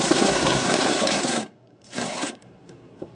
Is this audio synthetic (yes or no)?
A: yes